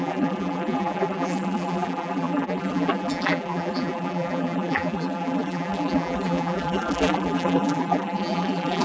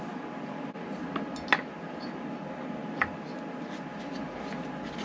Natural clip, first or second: second